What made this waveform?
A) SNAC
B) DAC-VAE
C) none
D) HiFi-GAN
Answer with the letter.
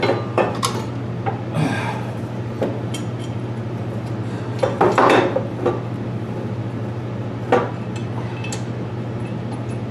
C